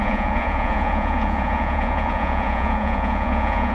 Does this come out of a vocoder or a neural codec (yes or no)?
yes